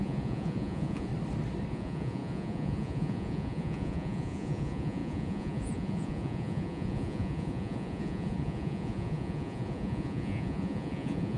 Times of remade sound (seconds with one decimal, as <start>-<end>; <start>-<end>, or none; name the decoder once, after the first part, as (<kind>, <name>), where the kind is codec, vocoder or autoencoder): 0.0-1.1 (vocoder, Vocos); 1.7-11.4